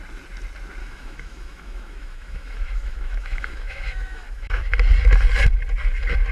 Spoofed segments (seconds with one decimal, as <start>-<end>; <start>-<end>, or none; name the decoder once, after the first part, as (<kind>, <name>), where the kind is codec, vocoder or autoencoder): 0.8-4.6 (autoencoder, DAC-VAE)